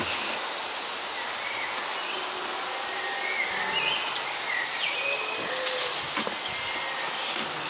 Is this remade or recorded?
recorded